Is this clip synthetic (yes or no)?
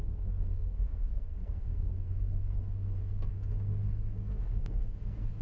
yes